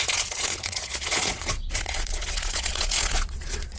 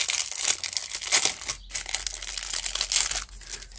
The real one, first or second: second